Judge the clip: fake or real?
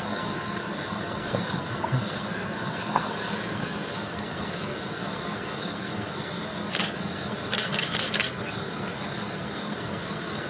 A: fake